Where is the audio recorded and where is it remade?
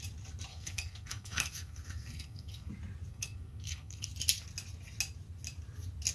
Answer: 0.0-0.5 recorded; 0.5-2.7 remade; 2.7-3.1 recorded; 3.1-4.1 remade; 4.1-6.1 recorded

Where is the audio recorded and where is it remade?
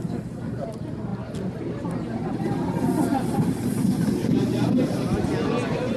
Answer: 0.0-6.0 recorded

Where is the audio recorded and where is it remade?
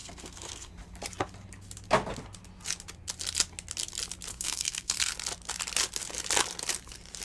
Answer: 0.0-0.7 remade; 0.7-4.3 recorded; 4.3-5.1 remade; 5.1-7.2 recorded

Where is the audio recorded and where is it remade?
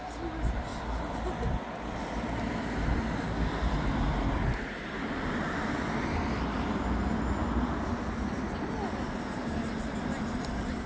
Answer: 0.0-10.9 recorded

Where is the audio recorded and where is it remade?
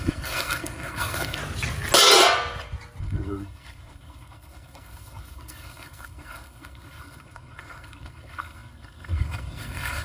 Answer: 0.0-1.4 remade; 1.4-3.0 recorded; 3.0-10.0 remade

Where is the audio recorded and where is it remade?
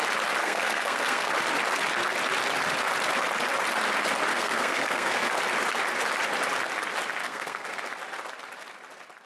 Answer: 0.0-0.4 recorded; 0.4-1.3 remade; 1.3-4.3 recorded; 4.3-5.3 remade; 5.3-7.2 recorded; 7.2-7.8 remade; 7.8-9.3 recorded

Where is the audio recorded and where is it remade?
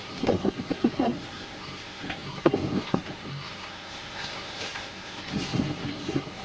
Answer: 0.0-6.4 remade